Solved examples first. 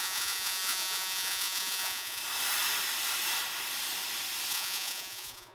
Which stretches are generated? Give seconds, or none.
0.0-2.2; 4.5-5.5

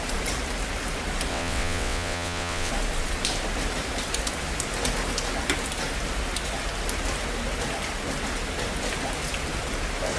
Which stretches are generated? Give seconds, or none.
1.3-2.7

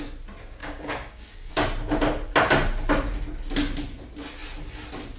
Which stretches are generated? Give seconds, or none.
0.6-1.5

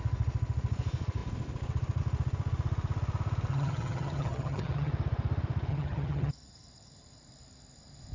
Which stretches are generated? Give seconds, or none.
3.5-4.9; 5.7-6.3

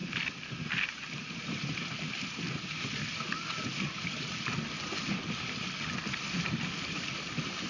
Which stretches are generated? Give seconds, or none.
0.0-4.5

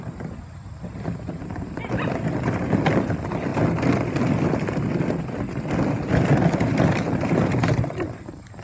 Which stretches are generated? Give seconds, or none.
none